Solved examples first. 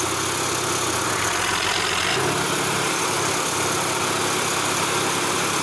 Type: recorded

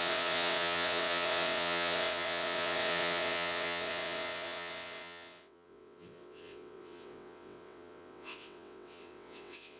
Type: remade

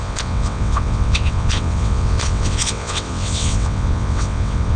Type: remade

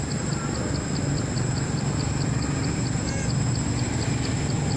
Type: recorded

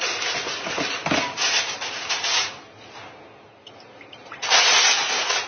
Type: recorded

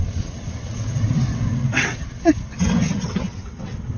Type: remade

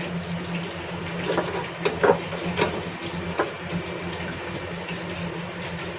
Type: recorded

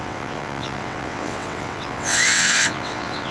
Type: remade